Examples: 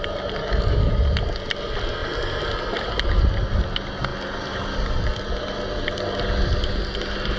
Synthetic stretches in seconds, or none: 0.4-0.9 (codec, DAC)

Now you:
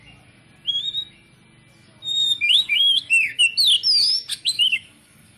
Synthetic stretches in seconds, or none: 2.2-3.4 (codec, DAC); 4.3-5.4

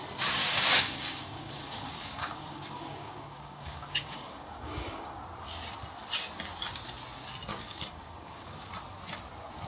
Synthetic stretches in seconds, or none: 0.4-5.2 (codec, DAC); 7.5-8.7

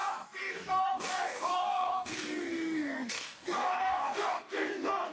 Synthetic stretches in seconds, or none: 0.0-5.1 (codec, DAC)

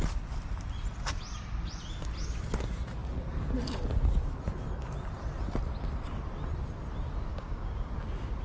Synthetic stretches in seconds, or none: 7.3-7.9 (codec, DAC)

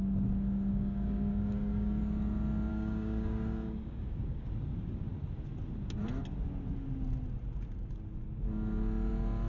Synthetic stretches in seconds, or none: 0.7-2.0 (codec, DAC); 2.7-4.5